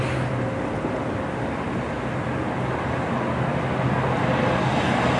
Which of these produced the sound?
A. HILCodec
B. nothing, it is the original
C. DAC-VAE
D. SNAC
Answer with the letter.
B